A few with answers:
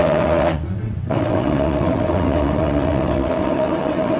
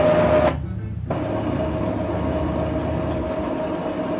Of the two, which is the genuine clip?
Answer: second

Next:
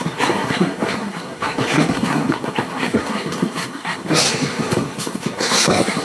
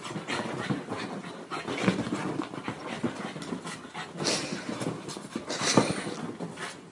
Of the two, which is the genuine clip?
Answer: second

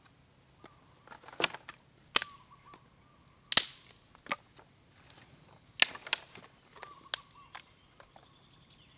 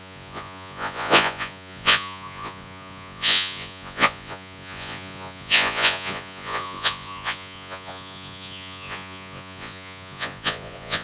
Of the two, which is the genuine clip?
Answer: first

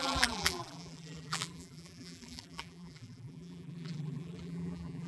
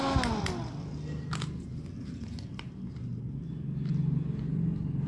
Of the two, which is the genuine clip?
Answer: second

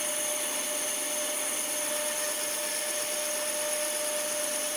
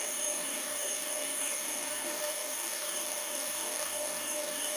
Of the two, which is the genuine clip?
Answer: first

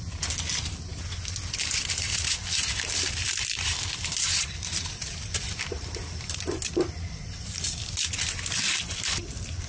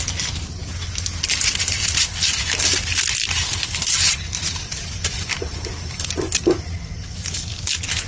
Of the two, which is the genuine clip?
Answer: second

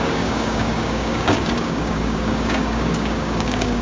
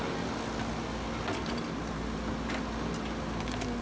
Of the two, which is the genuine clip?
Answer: second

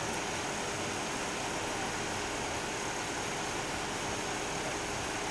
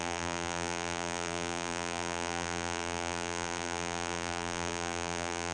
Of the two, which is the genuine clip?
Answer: first